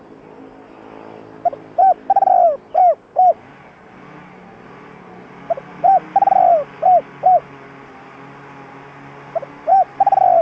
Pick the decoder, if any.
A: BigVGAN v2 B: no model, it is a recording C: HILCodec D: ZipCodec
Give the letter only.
B